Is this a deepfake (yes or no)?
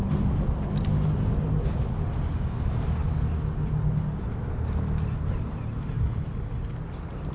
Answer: no